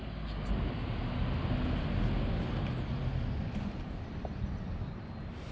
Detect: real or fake real